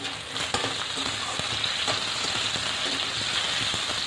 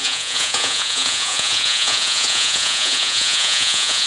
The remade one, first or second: second